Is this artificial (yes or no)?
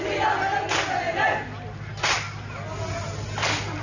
no